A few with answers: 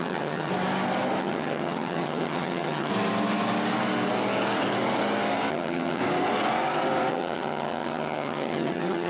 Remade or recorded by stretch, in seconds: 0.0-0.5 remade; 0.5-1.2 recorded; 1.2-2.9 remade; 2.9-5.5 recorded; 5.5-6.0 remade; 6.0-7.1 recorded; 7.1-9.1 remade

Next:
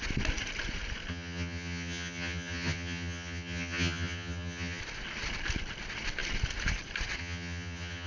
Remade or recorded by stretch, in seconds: 0.0-1.1 recorded; 1.1-4.8 remade; 4.8-7.2 recorded; 7.2-8.1 remade

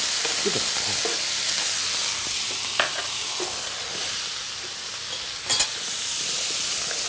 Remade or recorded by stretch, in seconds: 0.0-7.1 recorded

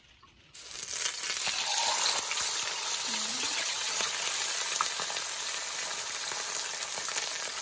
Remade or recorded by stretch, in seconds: 0.0-3.3 recorded; 3.3-4.1 remade; 4.1-7.6 recorded

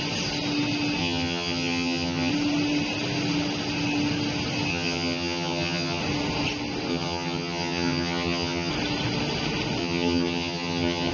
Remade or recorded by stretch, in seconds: 0.0-1.0 recorded; 1.0-2.3 remade; 2.3-4.7 recorded; 4.7-6.0 remade; 6.0-6.9 recorded; 6.9-8.7 remade; 8.7-9.8 recorded; 9.8-11.1 remade

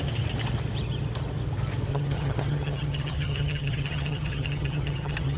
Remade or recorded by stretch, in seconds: 0.0-1.9 recorded; 1.9-5.4 remade